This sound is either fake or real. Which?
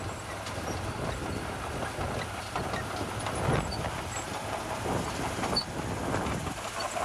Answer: real